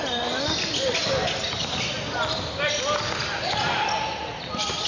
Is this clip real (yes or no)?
yes